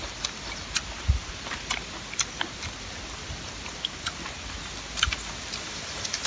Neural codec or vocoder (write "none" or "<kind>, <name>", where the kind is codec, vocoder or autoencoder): none